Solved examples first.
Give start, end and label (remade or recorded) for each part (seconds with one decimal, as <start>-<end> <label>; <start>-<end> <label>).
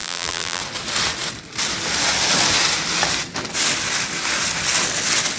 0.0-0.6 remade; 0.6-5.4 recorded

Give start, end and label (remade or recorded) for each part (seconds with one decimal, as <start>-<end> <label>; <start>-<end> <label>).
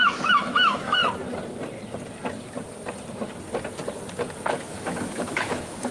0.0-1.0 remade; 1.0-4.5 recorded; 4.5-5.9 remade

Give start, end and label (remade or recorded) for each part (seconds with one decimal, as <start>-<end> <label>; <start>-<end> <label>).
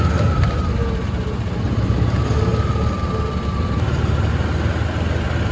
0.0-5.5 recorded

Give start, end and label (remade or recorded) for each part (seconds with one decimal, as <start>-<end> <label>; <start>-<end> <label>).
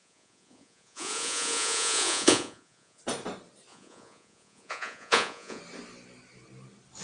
0.0-3.0 remade; 3.0-3.7 recorded; 3.7-5.6 remade; 5.6-7.0 recorded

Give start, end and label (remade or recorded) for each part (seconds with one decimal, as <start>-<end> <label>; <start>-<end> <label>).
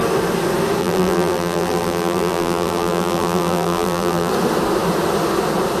0.0-0.8 recorded; 0.8-4.3 remade; 4.3-5.8 recorded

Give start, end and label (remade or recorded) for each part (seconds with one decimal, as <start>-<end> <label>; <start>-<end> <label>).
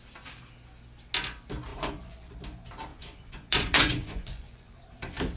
0.0-1.7 recorded; 1.7-2.3 remade; 2.3-2.9 recorded; 2.9-4.8 remade; 4.8-5.4 recorded